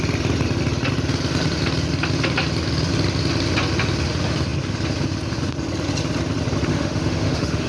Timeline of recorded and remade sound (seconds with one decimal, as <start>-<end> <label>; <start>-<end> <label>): 0.0-6.7 recorded; 6.7-7.7 remade